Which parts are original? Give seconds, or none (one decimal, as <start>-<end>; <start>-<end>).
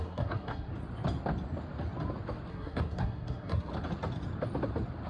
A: 0.7-2.5; 3.7-5.1